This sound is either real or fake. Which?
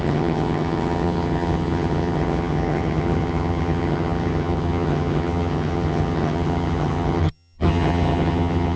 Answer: fake